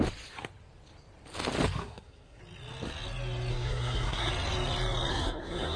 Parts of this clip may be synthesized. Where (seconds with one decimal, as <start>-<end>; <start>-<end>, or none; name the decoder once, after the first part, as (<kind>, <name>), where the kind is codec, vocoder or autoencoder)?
1.8-2.4 (codec, SNAC); 3.5-4.3; 5.1-5.8